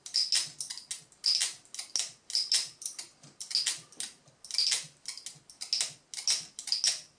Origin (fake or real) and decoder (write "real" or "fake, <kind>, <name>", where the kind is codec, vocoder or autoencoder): real